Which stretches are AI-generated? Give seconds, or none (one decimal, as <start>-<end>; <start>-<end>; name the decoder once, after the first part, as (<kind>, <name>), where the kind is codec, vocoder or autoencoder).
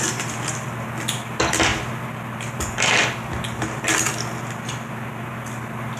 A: none